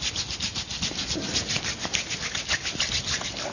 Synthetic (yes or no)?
no